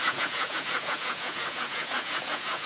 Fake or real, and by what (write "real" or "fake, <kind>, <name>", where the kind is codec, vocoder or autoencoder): fake, vocoder, Vocos